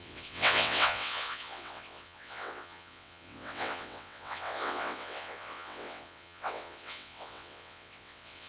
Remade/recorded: remade